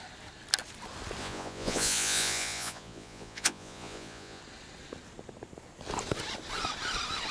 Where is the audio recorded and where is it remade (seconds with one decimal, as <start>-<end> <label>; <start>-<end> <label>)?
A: 0.0-1.2 recorded; 1.2-4.4 remade; 4.4-7.3 recorded